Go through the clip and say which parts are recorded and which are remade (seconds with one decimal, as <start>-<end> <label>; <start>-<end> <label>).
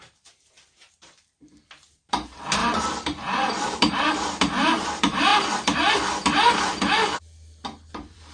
0.0-5.3 remade; 5.3-7.9 recorded; 7.9-8.3 remade